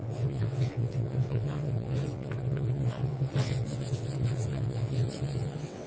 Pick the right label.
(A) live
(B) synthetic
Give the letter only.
B